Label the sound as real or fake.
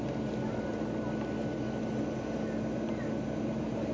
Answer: real